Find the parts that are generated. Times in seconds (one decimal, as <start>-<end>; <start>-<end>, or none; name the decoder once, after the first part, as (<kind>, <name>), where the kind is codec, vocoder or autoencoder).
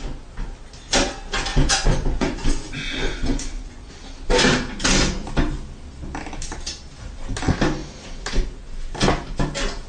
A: 1.5-3.9 (vocoder, Vocos)